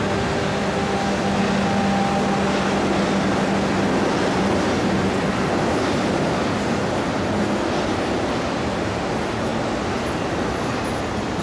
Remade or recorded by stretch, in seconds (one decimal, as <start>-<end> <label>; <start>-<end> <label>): 0.0-11.4 recorded